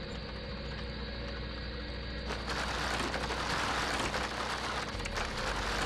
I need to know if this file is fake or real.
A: real